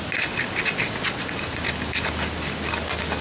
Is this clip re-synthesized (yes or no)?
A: no